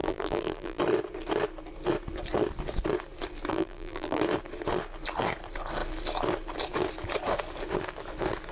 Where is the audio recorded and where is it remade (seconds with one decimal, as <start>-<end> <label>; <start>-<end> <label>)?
0.0-0.8 remade; 0.8-3.5 recorded; 3.5-4.2 remade; 4.2-8.5 recorded